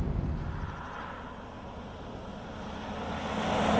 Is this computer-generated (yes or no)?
no